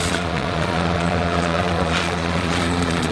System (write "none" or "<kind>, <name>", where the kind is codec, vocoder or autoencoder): vocoder, Vocos